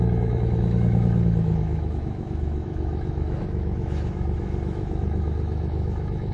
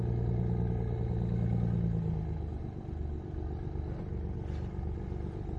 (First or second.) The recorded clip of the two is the second